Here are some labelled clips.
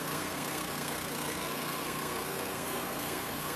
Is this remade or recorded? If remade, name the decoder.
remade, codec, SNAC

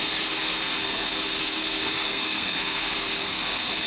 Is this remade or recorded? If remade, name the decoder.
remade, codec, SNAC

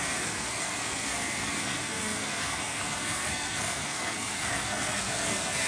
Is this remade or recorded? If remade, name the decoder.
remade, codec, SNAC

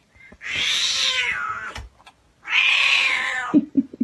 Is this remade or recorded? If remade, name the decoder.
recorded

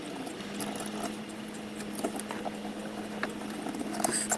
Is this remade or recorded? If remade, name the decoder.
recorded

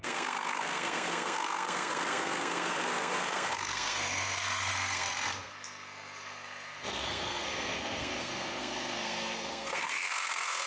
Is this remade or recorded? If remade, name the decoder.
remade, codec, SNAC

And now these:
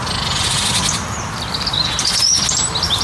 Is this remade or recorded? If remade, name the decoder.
recorded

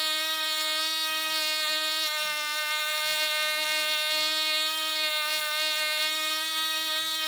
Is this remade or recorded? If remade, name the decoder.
remade, codec, SNAC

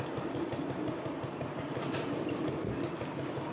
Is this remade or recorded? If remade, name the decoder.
recorded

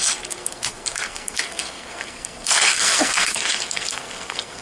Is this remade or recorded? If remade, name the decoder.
remade, codec, SNAC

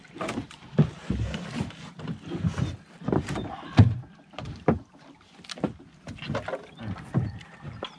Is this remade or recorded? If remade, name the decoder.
recorded